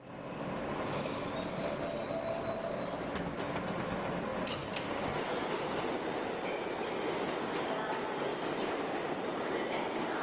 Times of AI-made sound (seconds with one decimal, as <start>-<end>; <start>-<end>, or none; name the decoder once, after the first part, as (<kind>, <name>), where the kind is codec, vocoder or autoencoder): none